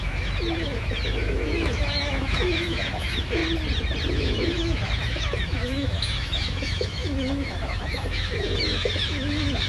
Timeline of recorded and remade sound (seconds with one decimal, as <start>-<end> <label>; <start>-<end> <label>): 0.0-3.4 remade; 3.4-4.1 recorded; 4.1-9.7 remade